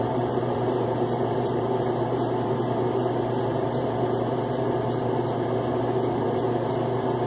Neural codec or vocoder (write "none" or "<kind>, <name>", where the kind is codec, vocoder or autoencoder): vocoder, BigVGAN v2